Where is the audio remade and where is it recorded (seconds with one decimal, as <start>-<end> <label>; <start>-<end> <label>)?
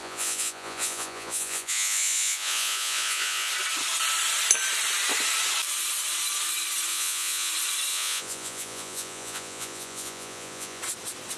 0.0-3.5 remade; 3.5-6.9 recorded; 6.9-7.5 remade; 7.5-7.9 recorded; 7.9-10.8 remade; 10.8-11.4 recorded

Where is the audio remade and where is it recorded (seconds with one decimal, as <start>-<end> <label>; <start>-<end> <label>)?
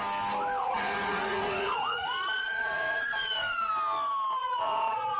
0.0-0.6 recorded; 0.6-3.7 remade; 3.7-4.4 recorded; 4.4-5.2 remade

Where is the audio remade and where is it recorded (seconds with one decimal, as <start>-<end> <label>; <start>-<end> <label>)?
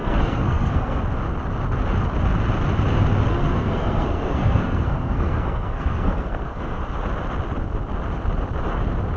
0.0-1.0 remade; 1.0-3.3 recorded; 3.3-6.8 remade; 6.8-9.2 recorded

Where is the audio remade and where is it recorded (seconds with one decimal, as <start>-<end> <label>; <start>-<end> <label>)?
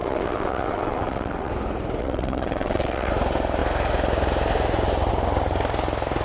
0.0-1.5 remade; 1.5-2.0 recorded; 2.0-3.1 remade; 3.1-6.2 recorded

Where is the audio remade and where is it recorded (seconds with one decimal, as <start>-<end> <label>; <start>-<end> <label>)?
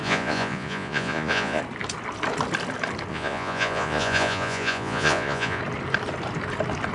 0.0-1.6 remade; 1.6-3.1 recorded; 3.1-5.6 remade; 5.6-6.9 recorded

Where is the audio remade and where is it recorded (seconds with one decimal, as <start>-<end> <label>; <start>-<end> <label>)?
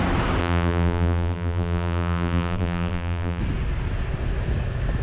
0.0-0.4 recorded; 0.4-3.4 remade; 3.4-5.0 recorded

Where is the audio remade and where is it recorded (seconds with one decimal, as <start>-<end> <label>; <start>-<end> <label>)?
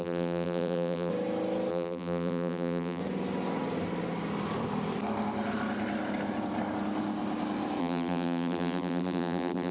0.0-1.1 remade; 1.1-1.7 recorded; 1.7-3.0 remade; 3.0-7.8 recorded; 7.8-9.7 remade